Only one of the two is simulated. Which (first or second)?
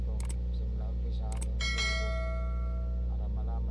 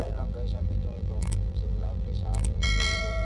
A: second